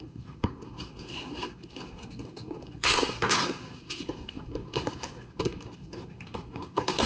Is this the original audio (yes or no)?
no